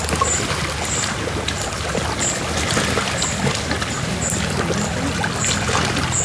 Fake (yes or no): no